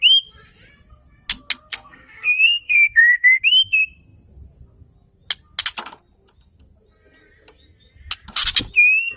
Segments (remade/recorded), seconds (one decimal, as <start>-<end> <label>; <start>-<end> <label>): 0.0-1.7 recorded; 1.7-3.4 remade; 3.4-9.2 recorded